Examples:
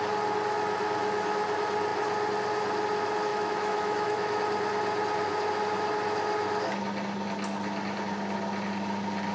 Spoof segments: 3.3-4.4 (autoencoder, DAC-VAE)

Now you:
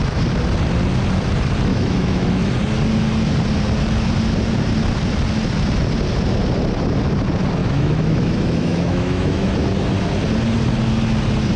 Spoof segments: 1.7-2.3 (autoencoder, DAC-VAE); 7.6-9.5

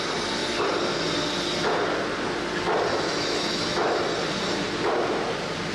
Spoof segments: 2.9-4.0 (autoencoder, DAC-VAE)

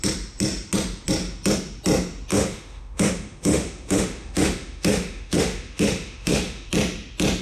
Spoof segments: 2.3-6.7 (autoencoder, DAC-VAE)

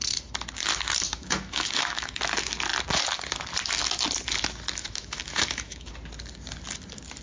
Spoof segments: 1.1-2.2 (autoencoder, DAC-VAE); 4.8-5.9

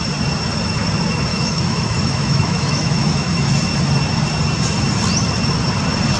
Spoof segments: 1.3-3.6 (autoencoder, DAC-VAE)